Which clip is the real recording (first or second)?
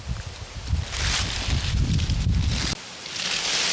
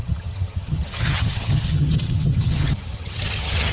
first